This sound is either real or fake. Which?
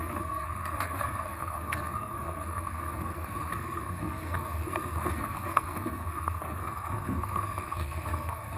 fake